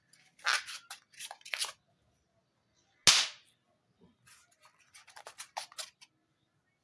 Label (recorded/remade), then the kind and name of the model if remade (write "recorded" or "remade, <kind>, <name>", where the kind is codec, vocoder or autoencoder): recorded